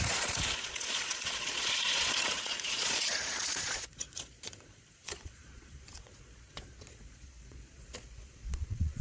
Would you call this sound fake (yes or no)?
yes